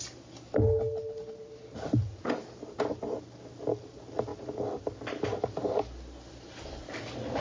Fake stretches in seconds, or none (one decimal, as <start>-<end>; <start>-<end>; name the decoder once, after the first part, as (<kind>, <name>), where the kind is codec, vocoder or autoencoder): none